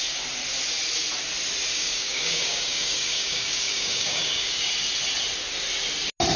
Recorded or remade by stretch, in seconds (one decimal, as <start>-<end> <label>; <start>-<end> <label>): 0.0-1.7 recorded; 1.7-4.7 remade; 4.7-6.4 recorded